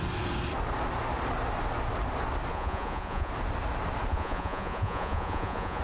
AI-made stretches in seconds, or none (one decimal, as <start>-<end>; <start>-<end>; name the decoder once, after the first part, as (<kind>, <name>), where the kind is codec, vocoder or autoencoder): 2.5-3.3 (vocoder, Vocos); 4.1-5.8